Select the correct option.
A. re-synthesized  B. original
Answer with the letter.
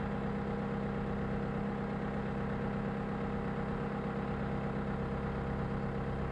B